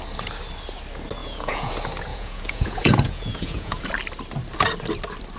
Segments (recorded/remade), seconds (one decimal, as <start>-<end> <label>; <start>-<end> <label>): 0.0-1.2 recorded; 1.2-1.7 remade; 1.7-2.1 recorded; 2.1-3.9 remade; 3.9-5.4 recorded

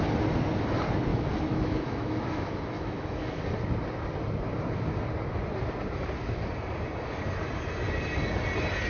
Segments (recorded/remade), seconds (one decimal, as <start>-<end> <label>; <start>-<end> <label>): 0.0-1.1 recorded; 1.1-3.4 remade; 3.4-8.9 recorded

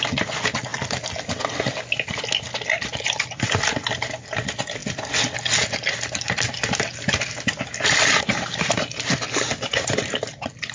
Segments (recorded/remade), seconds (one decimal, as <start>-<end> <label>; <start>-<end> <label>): 0.0-10.7 recorded

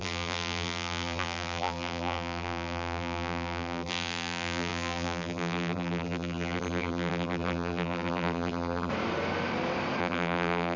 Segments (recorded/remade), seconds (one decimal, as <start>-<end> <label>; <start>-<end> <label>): 0.0-8.9 remade; 8.9-10.0 recorded; 10.0-10.8 remade

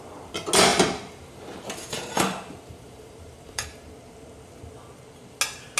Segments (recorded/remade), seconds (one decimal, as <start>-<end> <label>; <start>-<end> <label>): 0.0-0.7 recorded; 0.7-3.9 remade; 3.9-5.8 recorded

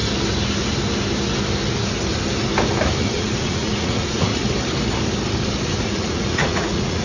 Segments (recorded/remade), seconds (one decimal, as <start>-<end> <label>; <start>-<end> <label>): 0.0-3.0 recorded; 3.0-4.3 remade; 4.3-5.8 recorded; 5.8-7.0 remade